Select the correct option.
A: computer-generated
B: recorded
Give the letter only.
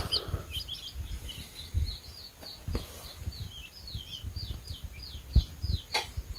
B